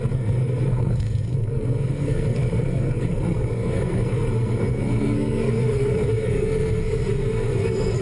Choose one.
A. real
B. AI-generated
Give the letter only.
B